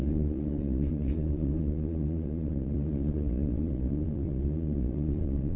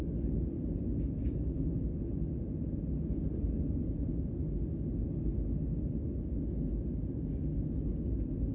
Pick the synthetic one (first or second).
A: first